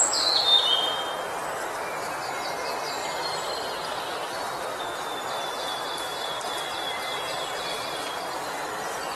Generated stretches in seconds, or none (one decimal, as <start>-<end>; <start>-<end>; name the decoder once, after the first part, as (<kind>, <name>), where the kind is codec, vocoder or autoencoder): none